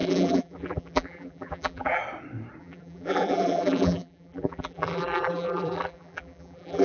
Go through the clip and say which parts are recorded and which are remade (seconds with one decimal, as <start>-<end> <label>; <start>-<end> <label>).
0.0-2.0 remade; 2.0-2.6 recorded; 2.6-6.8 remade